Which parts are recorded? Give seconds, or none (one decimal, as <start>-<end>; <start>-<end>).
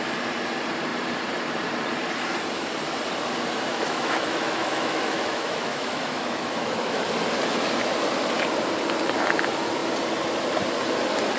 0.0-3.7; 7.0-11.4